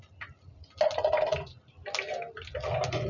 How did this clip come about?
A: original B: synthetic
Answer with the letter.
A